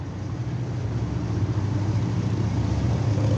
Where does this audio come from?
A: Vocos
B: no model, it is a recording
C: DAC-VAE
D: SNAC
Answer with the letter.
B